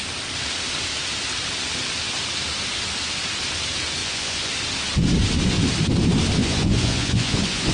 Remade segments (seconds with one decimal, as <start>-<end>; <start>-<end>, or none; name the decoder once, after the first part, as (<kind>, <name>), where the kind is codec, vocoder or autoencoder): 4.0-4.5 (vocoder, Vocos); 6.4-7.7